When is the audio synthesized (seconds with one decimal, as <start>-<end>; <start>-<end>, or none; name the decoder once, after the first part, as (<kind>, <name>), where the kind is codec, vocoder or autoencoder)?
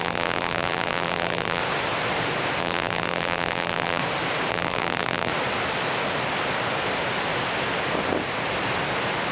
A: 0.0-1.6 (vocoder, BigVGAN v2); 2.6-4.0; 4.5-5.3